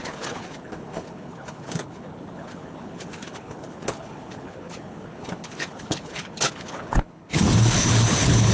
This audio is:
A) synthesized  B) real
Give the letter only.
A